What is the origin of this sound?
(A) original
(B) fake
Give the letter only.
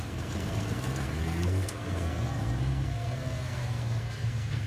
B